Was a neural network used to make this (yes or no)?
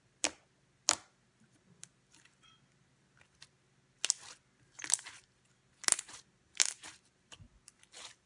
no